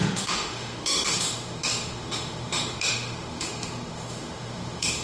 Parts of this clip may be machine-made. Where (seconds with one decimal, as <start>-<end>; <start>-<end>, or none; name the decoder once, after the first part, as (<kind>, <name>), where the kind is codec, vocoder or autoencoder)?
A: 0.0-5.0 (autoencoder, DAC-VAE)

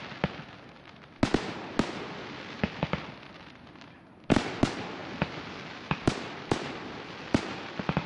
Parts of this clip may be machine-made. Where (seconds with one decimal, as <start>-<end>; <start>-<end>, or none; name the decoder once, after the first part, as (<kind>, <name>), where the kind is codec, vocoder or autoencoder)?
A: none

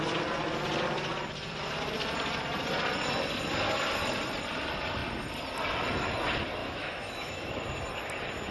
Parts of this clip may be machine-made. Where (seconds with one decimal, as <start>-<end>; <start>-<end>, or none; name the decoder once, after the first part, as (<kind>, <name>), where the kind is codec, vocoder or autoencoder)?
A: 6.6-7.6 (autoencoder, DAC-VAE)

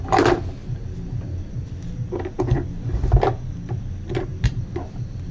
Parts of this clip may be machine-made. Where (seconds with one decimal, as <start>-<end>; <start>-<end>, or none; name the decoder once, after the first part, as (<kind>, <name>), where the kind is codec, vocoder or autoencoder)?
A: none

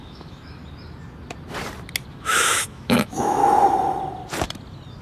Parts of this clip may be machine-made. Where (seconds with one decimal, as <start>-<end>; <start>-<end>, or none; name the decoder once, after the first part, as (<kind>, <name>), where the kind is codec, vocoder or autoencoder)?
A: 0.0-0.6 (autoencoder, DAC-VAE); 2.1-3.4

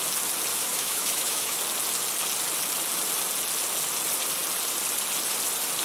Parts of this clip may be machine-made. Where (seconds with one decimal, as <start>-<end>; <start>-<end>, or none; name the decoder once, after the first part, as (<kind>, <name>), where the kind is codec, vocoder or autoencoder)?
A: 0.5-1.6 (autoencoder, DAC-VAE)